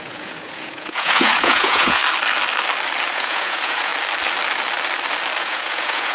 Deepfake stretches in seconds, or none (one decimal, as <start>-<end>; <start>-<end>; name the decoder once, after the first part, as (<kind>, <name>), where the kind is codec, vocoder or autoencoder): 0.0-2.0 (vocoder, Vocos); 3.1-3.9; 5.4-6.1